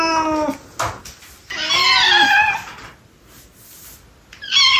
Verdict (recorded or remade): recorded